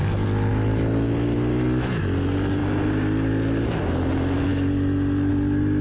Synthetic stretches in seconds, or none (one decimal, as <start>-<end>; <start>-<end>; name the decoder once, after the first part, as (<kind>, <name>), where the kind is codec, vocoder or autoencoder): none